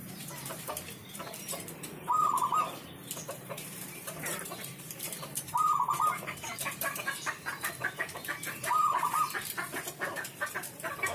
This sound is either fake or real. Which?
fake